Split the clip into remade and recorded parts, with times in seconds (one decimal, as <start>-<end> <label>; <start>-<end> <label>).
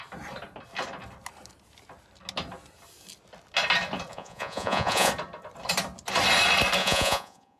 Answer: 0.0-4.1 recorded; 4.1-5.1 remade; 5.1-6.8 recorded; 6.8-7.6 remade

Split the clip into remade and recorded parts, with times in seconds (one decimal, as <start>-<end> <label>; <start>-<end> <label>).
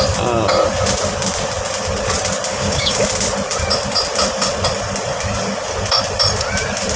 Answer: 0.0-2.5 recorded; 2.5-3.0 remade; 3.0-7.0 recorded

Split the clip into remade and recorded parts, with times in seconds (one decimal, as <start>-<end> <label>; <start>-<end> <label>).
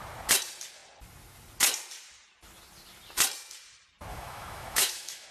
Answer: 0.0-4.1 recorded; 4.1-5.3 remade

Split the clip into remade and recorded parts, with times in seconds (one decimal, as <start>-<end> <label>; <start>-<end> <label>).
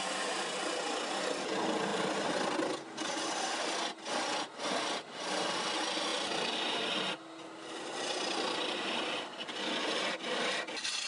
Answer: 0.0-11.1 recorded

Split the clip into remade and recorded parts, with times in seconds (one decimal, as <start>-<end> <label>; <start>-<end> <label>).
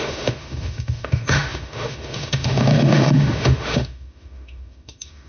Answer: 0.0-5.3 remade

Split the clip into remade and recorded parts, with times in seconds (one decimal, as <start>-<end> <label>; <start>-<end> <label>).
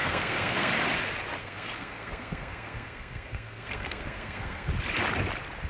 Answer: 0.0-0.7 remade; 0.7-1.4 recorded; 1.4-4.7 remade; 4.7-5.7 recorded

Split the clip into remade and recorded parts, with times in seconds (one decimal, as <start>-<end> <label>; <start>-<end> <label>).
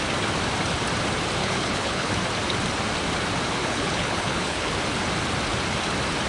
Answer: 0.0-1.4 recorded; 1.4-2.1 remade; 2.1-3.6 recorded; 3.6-4.7 remade; 4.7-6.3 recorded